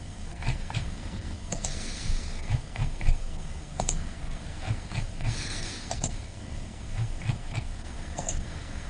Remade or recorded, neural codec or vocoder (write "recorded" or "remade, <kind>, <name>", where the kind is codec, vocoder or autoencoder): remade, codec, SNAC